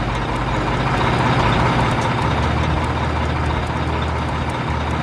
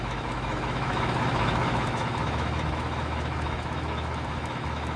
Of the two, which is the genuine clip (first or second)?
first